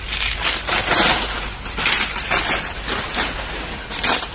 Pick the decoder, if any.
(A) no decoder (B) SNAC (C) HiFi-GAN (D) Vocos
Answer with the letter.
A